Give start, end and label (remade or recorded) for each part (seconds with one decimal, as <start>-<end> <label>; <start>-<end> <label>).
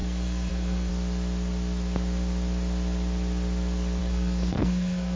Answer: 0.0-0.9 remade; 0.9-4.0 recorded; 4.0-5.2 remade